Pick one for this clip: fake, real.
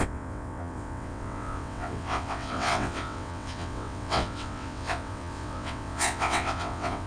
fake